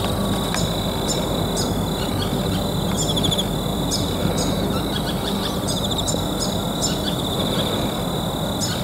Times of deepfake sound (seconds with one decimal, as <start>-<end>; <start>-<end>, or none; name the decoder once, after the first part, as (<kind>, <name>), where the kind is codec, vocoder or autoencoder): 3.7-6.1 (vocoder, BigVGAN v2)